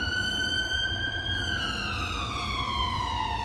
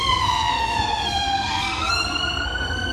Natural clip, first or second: first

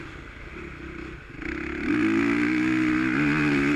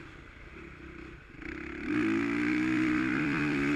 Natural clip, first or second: first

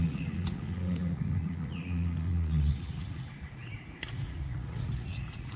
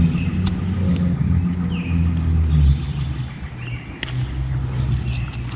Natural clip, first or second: second